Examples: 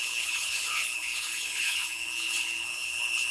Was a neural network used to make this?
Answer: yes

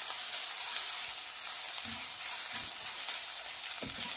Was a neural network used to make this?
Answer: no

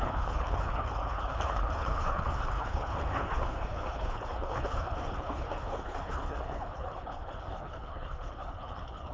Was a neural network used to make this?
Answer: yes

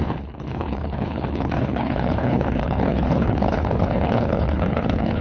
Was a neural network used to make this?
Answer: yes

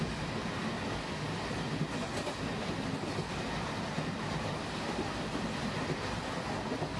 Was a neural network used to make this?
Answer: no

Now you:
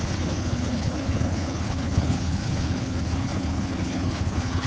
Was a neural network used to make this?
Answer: yes